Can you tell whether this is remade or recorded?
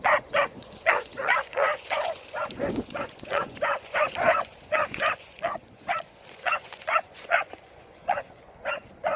remade